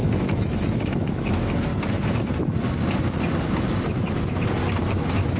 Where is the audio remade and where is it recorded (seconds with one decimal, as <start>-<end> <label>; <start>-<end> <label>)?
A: 0.0-1.7 remade; 1.7-4.9 recorded; 4.9-5.4 remade